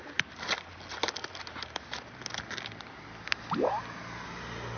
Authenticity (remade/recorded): recorded